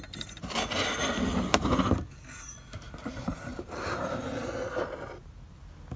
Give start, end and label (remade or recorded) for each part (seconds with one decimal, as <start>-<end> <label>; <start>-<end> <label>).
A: 0.0-6.0 recorded

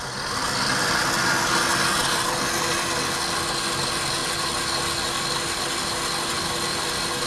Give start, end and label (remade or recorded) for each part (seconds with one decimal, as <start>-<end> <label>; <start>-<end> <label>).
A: 0.0-7.3 recorded

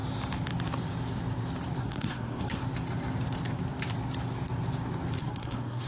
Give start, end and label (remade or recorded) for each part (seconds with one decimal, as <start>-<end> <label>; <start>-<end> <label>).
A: 0.0-1.8 recorded; 1.8-2.6 remade; 2.6-5.2 recorded; 5.2-5.9 remade

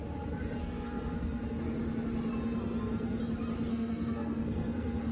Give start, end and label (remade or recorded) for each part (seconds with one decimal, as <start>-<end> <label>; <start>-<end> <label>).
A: 0.0-0.6 recorded; 0.6-1.6 remade; 1.6-2.6 recorded; 2.6-3.2 remade; 3.2-3.7 recorded; 3.7-5.1 remade

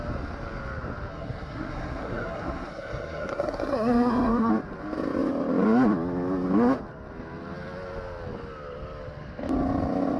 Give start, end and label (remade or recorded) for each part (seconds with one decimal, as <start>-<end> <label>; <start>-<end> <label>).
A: 0.0-1.1 recorded; 1.1-4.5 remade; 4.5-10.2 recorded

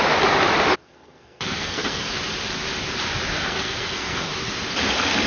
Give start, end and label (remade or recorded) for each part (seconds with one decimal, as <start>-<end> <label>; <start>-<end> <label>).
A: 0.0-0.8 recorded; 0.8-2.1 remade; 2.1-3.3 recorded; 3.3-4.3 remade; 4.3-5.3 recorded

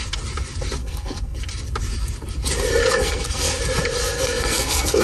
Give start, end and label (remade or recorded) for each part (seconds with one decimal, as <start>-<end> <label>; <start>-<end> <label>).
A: 0.0-0.8 recorded; 0.8-1.4 remade; 1.4-2.8 recorded; 2.8-3.6 remade; 3.6-4.0 recorded; 4.0-5.0 remade

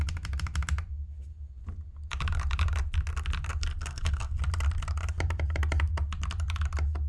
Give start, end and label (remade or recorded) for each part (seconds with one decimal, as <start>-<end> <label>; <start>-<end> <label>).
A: 0.0-3.8 recorded; 3.8-4.4 remade; 4.4-7.1 recorded